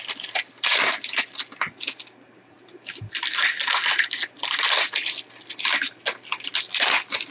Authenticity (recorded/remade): recorded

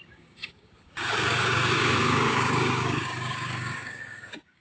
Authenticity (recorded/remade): remade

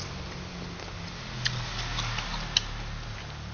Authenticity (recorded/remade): recorded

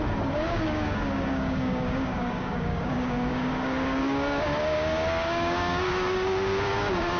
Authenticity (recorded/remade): remade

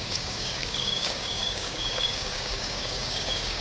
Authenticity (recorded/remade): remade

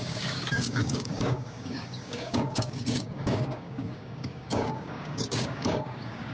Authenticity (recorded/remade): remade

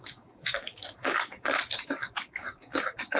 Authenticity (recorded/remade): remade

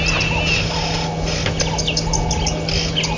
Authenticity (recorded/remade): recorded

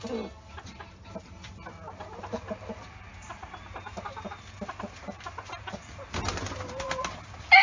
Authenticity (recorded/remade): recorded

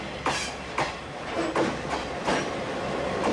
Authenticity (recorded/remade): recorded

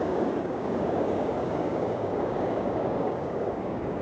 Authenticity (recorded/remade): remade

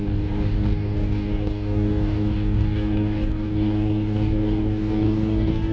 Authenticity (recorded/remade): remade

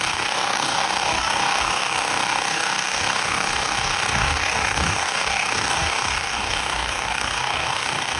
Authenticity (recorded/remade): remade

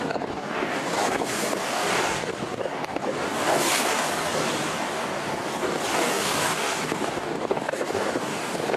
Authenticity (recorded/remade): remade